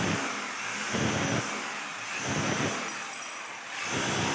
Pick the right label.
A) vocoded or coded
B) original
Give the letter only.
B